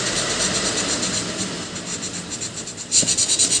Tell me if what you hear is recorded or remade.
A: recorded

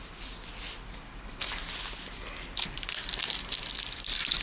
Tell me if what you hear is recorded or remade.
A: recorded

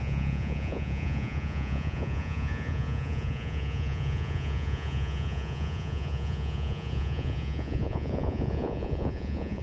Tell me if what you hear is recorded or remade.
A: remade